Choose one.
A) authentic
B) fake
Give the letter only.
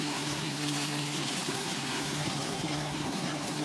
B